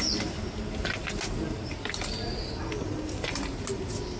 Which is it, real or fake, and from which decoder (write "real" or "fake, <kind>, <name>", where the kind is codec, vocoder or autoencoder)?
real